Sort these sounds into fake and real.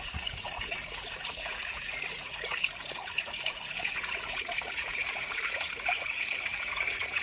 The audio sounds fake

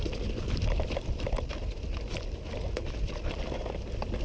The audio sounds real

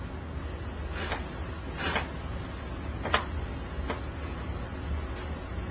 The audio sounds real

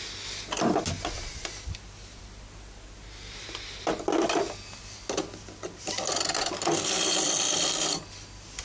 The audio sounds real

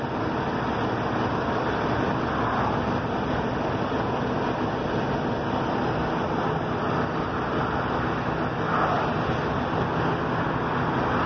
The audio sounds real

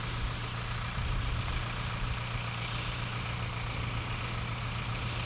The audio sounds real